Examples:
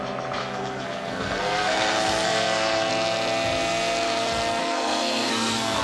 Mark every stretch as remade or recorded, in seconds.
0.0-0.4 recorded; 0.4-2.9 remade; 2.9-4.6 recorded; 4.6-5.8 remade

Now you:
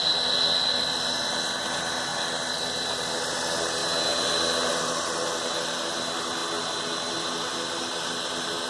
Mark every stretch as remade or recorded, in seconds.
0.0-8.7 recorded

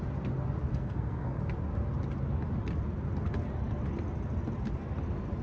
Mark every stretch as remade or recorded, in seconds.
0.0-0.7 recorded; 0.7-1.4 remade; 1.4-5.4 recorded